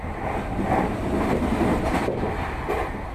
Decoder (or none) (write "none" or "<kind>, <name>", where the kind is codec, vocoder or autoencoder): none